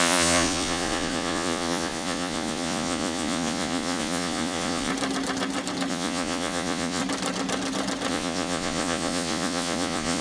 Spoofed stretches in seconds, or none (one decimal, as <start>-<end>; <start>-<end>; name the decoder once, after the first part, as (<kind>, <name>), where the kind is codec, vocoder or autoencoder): 0.0-4.9 (vocoder, Vocos); 5.9-7.0; 8.1-10.2

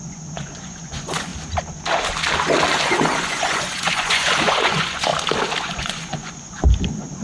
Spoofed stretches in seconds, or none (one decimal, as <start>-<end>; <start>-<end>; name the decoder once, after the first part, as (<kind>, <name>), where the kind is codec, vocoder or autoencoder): 0.0-1.3 (vocoder, Vocos); 2.9-5.1; 5.6-7.2

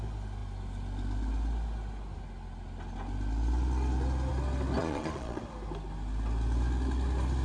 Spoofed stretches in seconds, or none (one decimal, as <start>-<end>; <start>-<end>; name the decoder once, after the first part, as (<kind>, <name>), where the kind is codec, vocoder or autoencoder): 4.8-5.4 (vocoder, Vocos)

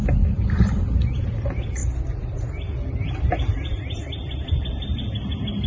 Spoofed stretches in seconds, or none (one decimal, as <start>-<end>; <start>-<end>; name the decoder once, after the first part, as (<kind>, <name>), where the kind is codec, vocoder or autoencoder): none

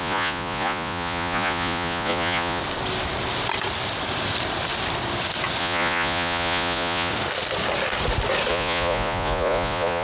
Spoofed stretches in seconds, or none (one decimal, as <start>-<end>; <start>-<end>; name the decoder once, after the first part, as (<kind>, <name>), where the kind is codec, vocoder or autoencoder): 0.0-2.6 (vocoder, Vocos); 5.6-7.1; 8.5-10.0

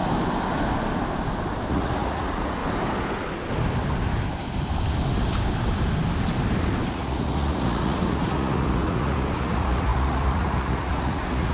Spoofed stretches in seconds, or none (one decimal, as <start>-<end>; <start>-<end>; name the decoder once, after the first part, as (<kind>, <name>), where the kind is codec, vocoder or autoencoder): 1.7-2.6 (vocoder, Vocos); 6.9-11.5

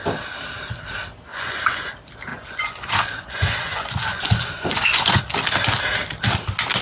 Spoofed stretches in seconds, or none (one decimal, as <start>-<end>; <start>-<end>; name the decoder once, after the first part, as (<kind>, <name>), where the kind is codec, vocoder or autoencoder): 1.3-1.9 (vocoder, Vocos); 2.3-5.2